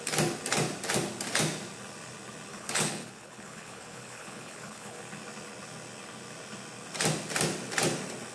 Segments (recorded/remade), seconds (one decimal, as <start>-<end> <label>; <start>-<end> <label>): 0.0-2.5 recorded; 2.5-5.0 remade; 5.0-8.3 recorded